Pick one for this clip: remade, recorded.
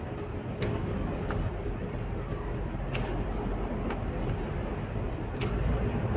recorded